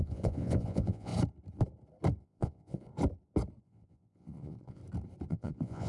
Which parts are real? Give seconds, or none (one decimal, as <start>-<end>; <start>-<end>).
1.1-2.2; 2.9-3.6; 4.8-5.3